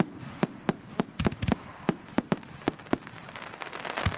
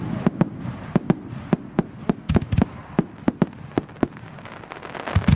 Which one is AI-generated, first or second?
first